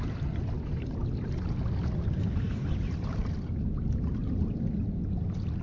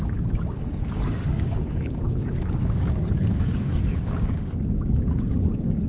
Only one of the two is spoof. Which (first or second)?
second